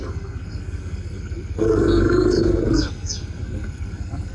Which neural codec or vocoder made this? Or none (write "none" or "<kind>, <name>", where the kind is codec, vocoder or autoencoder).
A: codec, SNAC